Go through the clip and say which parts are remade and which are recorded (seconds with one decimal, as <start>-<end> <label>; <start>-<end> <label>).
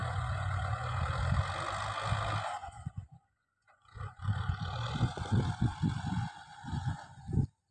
0.0-1.0 remade; 1.0-2.6 recorded; 2.6-7.2 remade; 7.2-7.7 recorded